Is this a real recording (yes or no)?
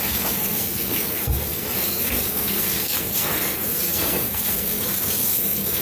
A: no